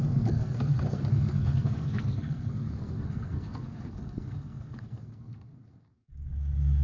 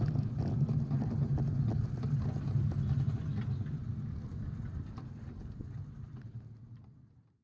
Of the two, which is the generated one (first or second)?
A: first